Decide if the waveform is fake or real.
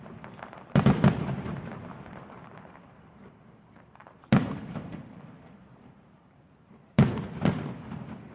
fake